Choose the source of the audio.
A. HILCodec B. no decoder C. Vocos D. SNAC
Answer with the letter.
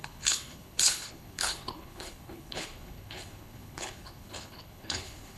A